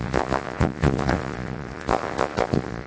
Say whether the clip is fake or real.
fake